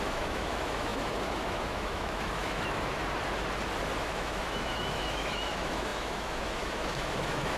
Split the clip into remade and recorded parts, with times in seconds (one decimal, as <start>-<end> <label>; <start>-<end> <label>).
0.0-3.0 remade; 3.0-4.0 recorded; 4.0-7.6 remade